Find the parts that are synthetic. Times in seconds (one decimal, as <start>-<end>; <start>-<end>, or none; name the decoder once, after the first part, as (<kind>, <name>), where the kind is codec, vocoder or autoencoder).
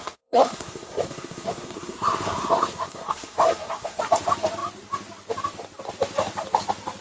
0.0-4.0 (codec, SNAC)